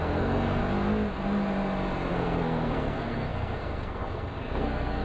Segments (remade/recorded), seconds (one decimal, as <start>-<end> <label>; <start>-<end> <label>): 0.0-0.6 remade; 0.6-2.1 recorded; 2.1-5.0 remade

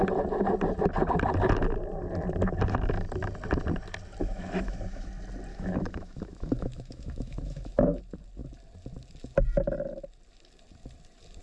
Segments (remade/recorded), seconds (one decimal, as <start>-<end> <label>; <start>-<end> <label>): 0.0-4.2 recorded; 4.2-5.1 remade; 5.1-5.5 recorded; 5.5-8.0 remade; 8.0-11.4 recorded

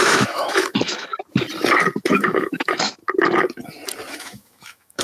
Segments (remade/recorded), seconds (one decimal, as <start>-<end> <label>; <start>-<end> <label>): 0.0-1.1 remade; 1.1-2.1 recorded; 2.1-3.0 remade; 3.0-4.1 recorded; 4.1-5.0 remade

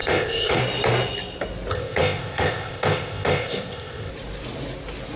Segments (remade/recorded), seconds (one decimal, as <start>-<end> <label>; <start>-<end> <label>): 0.0-0.6 remade; 0.6-1.7 recorded; 1.7-4.1 remade; 4.1-5.2 recorded